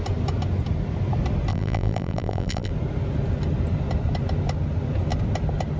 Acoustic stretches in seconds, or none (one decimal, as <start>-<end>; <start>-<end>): 0.0-1.5; 2.7-5.8